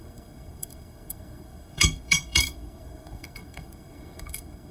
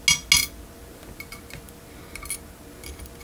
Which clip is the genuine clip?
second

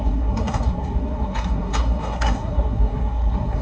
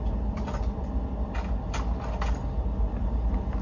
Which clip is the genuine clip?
second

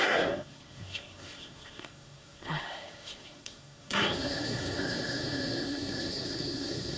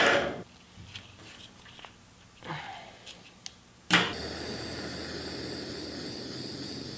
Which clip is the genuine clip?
second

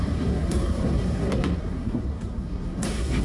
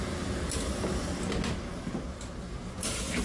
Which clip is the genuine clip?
second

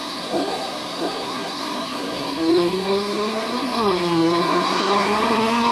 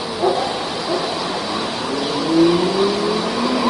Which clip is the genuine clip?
second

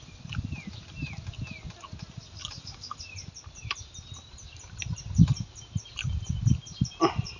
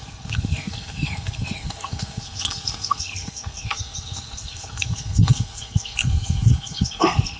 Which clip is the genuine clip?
first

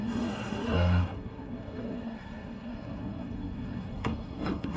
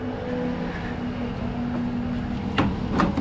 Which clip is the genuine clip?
second